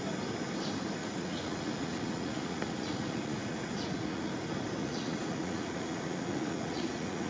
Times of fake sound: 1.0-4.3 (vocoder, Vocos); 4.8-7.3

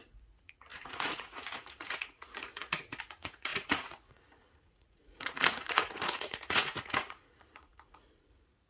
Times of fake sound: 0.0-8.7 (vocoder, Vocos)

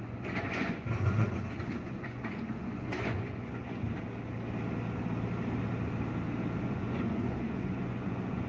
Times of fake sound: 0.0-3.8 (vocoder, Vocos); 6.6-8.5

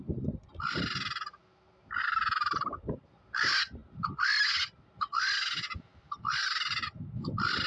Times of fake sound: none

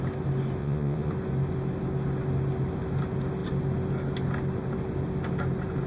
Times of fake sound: 0.6-1.1 (vocoder, Vocos)

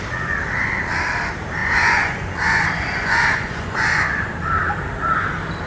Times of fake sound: 1.6-4.3 (vocoder, Vocos)

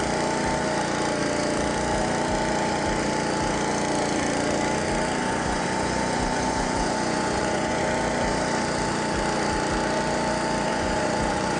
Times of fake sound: 5.2-7.8 (vocoder, Vocos); 10.7-11.6